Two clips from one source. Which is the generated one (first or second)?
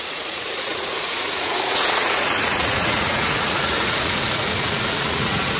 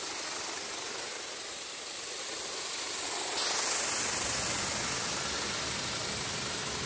first